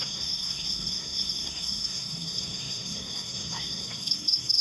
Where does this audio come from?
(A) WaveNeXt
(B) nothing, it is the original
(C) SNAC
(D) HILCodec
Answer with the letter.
C